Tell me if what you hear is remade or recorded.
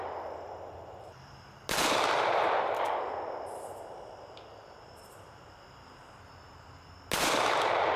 recorded